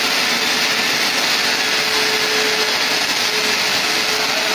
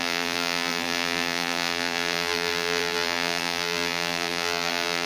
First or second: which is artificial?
second